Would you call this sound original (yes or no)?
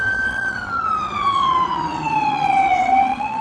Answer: no